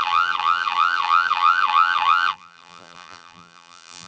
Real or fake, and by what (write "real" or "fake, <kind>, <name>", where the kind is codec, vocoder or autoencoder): fake, vocoder, BigVGAN v2